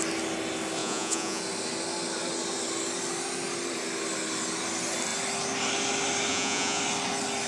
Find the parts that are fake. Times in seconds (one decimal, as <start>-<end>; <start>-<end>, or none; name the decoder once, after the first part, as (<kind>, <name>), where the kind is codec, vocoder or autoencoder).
0.8-1.4 (vocoder, Vocos); 6.3-6.8